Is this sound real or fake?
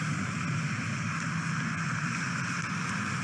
real